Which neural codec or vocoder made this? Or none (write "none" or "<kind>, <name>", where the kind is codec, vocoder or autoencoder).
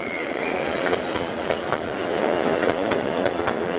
vocoder, Vocos